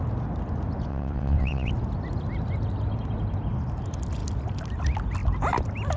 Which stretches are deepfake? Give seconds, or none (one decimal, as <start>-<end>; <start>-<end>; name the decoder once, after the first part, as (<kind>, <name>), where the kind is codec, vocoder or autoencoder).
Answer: 0.9-1.7 (vocoder, WaveNeXt)